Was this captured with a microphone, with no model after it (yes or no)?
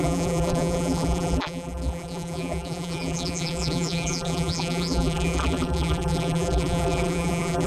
no